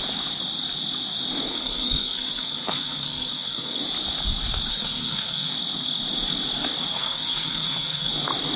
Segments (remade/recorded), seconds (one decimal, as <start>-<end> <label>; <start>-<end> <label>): 0.0-1.5 recorded; 1.5-3.8 remade; 3.8-4.7 recorded; 4.7-5.5 remade; 5.5-6.9 recorded; 6.9-8.1 remade; 8.1-8.6 recorded